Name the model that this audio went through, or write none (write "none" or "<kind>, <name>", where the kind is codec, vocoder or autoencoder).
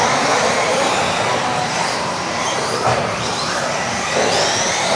vocoder, BigVGAN v2